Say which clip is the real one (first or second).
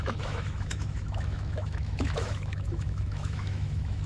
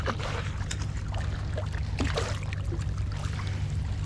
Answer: second